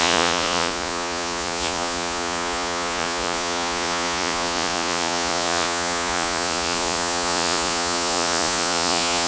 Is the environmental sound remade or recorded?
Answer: remade